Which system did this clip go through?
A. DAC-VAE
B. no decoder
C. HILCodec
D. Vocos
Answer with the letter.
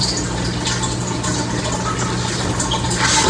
B